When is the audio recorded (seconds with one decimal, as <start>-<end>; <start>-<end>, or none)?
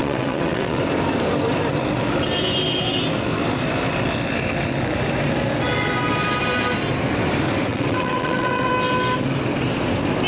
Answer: 0.8-7.7; 8.7-10.3